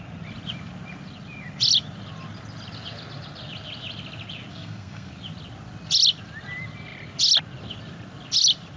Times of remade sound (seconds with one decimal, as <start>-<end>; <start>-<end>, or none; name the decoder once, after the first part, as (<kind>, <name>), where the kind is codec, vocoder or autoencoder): 4.5-5.1 (codec, SNAC)